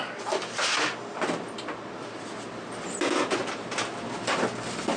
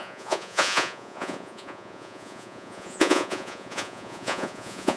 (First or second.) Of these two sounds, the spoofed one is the second